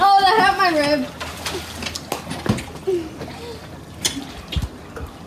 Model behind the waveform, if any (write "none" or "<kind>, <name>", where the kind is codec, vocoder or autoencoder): none